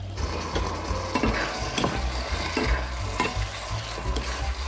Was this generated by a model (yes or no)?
no